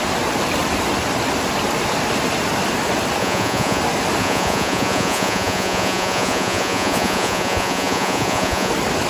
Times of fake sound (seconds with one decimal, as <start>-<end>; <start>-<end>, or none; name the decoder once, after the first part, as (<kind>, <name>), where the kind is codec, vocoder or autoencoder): 3.2-3.8 (vocoder, Vocos); 4.2-8.7